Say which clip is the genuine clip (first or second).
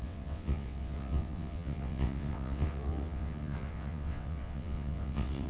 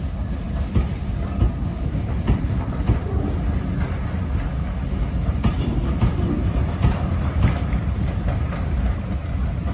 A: second